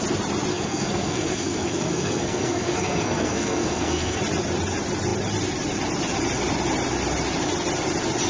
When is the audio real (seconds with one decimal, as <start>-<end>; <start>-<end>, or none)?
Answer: 0.0-0.5; 4.2-8.3